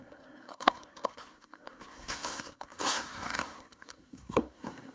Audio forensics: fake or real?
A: fake